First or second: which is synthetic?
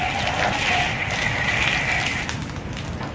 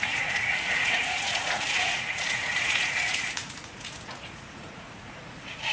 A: second